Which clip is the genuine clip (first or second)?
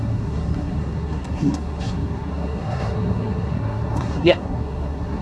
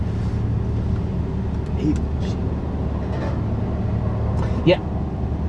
second